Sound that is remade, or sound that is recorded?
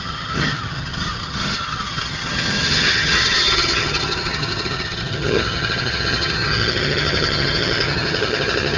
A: remade